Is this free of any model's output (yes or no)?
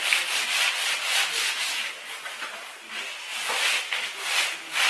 yes